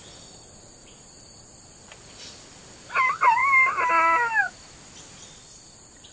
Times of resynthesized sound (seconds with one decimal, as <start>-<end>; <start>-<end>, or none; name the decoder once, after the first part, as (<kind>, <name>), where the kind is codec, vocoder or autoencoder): none